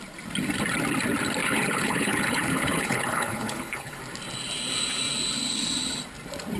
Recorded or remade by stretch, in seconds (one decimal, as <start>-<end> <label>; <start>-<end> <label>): 0.0-1.4 recorded; 1.4-4.0 remade; 4.0-6.6 recorded